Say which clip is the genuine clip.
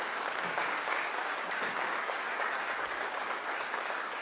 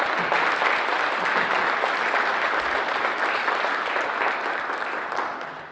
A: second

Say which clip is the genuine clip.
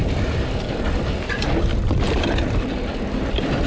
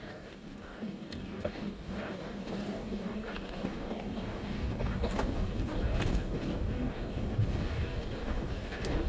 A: first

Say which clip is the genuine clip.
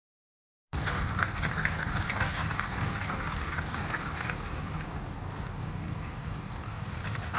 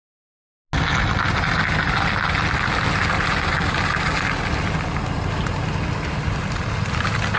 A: second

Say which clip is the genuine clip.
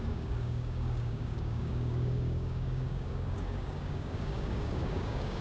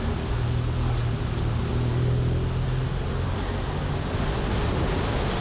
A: second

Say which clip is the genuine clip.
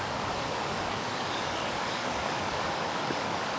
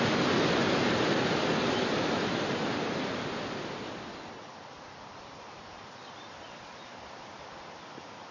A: second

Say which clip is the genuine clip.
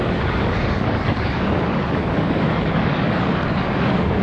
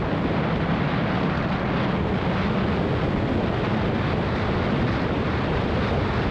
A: second